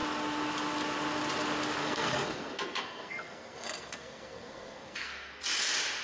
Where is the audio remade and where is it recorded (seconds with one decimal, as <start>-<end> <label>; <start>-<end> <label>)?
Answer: 0.0-1.8 recorded; 1.8-5.4 remade; 5.4-6.0 recorded